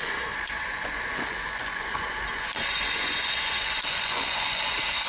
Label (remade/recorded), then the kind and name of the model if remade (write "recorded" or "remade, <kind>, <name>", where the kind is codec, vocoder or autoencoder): remade, vocoder, Vocos